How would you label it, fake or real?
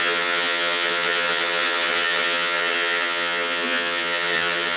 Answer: fake